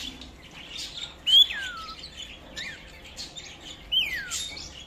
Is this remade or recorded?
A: recorded